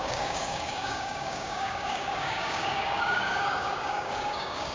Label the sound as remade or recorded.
remade